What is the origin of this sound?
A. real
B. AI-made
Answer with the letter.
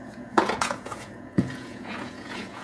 B